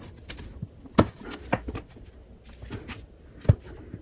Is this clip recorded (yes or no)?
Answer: yes